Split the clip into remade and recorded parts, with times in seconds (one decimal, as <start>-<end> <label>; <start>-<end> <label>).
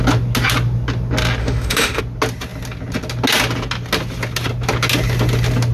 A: 0.0-1.4 recorded; 1.4-2.0 remade; 2.0-5.7 recorded